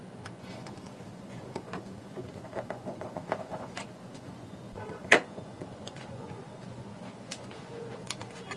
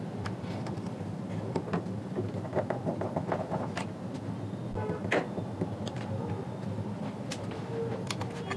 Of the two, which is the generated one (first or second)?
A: first